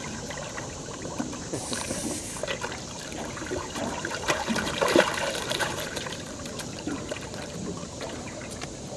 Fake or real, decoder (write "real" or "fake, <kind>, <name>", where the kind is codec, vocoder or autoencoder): fake, vocoder, BigVGAN v2